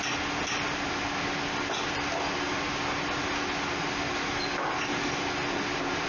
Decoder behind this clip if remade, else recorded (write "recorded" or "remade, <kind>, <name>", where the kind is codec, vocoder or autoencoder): recorded